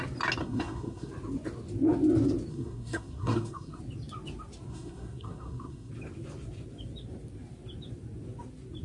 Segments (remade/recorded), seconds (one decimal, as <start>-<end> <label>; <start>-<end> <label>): 0.0-0.4 recorded; 0.4-1.1 remade; 1.1-2.5 recorded; 2.5-3.8 remade; 3.8-4.7 recorded; 4.7-5.9 remade; 5.9-8.8 recorded